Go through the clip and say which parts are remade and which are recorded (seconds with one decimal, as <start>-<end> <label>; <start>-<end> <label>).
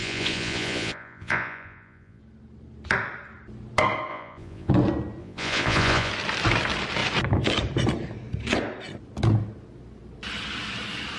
0.0-2.2 remade; 2.2-4.1 recorded; 4.1-4.7 remade; 4.7-5.2 recorded; 5.2-6.1 remade; 6.1-11.2 recorded